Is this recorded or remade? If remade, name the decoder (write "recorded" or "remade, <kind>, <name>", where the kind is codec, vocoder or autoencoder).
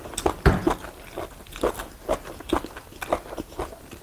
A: recorded